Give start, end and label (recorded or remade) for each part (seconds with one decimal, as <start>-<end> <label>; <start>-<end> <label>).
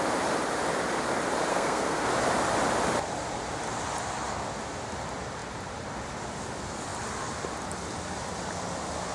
0.0-1.5 recorded; 1.5-2.1 remade; 2.1-9.1 recorded